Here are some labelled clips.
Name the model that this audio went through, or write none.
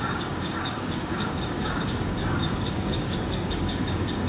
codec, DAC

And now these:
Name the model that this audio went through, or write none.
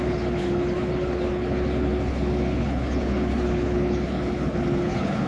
codec, HILCodec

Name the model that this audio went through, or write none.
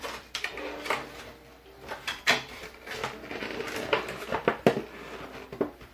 none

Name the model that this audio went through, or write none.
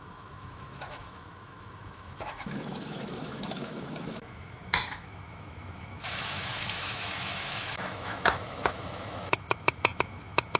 autoencoder, DAC-VAE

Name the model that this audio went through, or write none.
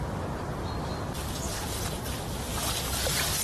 none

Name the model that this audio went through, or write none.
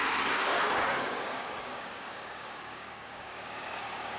codec, DAC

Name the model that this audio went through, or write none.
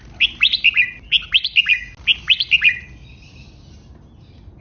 none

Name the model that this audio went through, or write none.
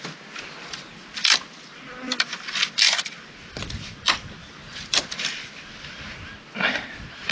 none